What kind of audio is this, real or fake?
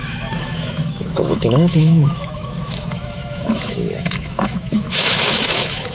fake